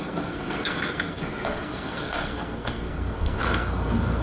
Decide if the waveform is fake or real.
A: fake